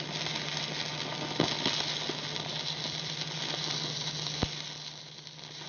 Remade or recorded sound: recorded